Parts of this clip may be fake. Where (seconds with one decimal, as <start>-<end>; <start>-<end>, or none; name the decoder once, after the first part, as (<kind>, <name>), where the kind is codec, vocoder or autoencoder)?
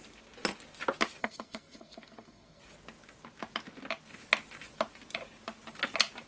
1.2-2.6 (codec, SNAC)